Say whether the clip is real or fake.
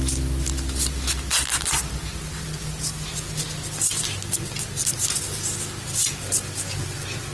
real